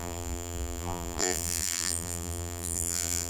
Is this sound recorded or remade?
remade